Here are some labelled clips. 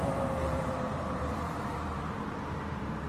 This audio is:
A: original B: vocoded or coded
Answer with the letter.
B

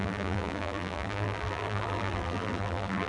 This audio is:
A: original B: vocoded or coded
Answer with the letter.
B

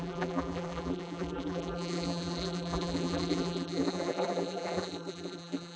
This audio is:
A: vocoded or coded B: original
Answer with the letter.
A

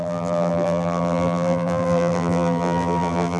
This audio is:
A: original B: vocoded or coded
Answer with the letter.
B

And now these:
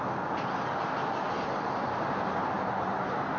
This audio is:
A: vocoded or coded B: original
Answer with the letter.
B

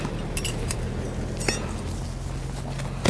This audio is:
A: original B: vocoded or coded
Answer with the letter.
A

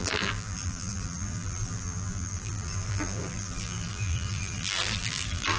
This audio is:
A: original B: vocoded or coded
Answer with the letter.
B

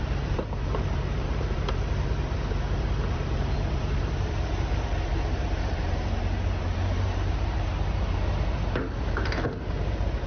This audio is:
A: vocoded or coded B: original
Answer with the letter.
A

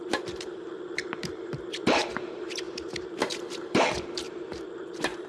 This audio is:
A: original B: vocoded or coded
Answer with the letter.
B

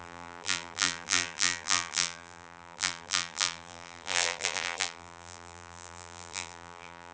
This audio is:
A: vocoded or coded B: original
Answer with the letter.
A